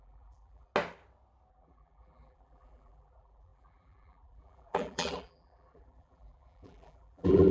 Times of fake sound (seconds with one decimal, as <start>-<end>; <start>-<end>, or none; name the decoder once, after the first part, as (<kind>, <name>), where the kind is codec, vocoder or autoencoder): 0.0-0.7 (vocoder, BigVGAN v2); 1.5-7.5